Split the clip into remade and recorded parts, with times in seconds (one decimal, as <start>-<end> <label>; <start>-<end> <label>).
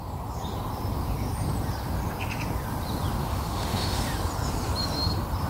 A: 0.0-3.2 recorded; 3.2-4.0 remade; 4.0-5.5 recorded